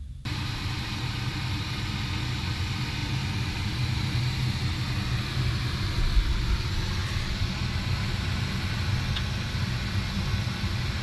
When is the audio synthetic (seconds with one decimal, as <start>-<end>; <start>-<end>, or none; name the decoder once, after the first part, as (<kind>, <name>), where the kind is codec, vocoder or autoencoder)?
none

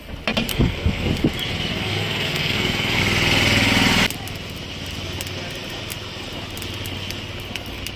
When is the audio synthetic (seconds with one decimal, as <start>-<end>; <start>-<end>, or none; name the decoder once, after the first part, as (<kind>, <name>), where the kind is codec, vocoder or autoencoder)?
0.5-1.1 (codec, SNAC); 1.7-3.0

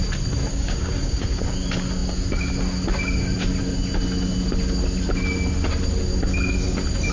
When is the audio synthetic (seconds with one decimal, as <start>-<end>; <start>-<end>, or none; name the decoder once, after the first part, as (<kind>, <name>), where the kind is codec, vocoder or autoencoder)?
0.5-1.4 (codec, DAC)

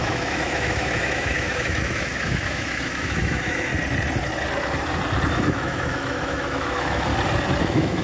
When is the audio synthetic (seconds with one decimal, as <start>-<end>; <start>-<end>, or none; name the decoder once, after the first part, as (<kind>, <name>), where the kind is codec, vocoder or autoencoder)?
0.0-3.7 (autoencoder, DAC-VAE); 5.3-7.1; 7.6-8.0

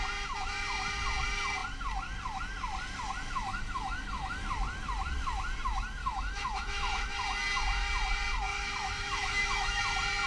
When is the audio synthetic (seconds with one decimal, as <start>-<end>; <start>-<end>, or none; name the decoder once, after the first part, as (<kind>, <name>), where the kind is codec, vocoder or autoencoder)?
3.5-4.4 (autoencoder, DAC-VAE); 6.0-7.2; 8.5-9.8

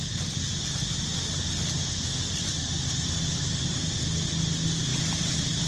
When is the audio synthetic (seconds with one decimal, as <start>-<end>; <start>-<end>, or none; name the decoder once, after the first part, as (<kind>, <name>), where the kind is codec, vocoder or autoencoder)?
none

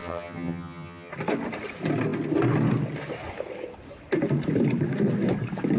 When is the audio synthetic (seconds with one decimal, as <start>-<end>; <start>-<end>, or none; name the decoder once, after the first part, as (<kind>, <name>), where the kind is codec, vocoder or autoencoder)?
0.0-1.1 (vocoder, HiFi-GAN)